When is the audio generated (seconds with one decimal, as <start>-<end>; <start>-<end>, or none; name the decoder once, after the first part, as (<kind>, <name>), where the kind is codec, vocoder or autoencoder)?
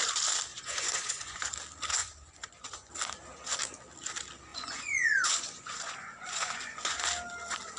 0.5-1.5 (vocoder, Vocos); 2.0-2.9; 4.5-7.0